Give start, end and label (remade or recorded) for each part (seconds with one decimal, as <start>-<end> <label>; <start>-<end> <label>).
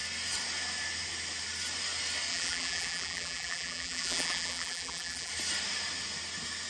0.0-2.3 recorded; 2.3-5.3 remade; 5.3-6.7 recorded